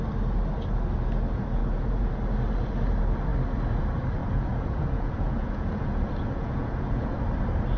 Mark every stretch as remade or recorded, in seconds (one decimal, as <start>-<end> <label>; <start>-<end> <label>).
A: 0.0-1.6 recorded; 1.6-2.1 remade; 2.1-4.2 recorded; 4.2-7.1 remade; 7.1-7.8 recorded